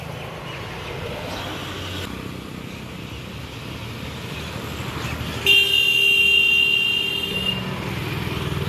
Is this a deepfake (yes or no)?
no